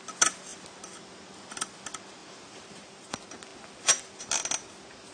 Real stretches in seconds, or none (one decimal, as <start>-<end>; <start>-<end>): 0.0-2.2; 3.1-5.1